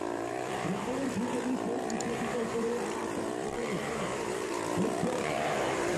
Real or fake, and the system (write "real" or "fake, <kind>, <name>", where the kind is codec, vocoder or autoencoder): fake, vocoder, BigVGAN v2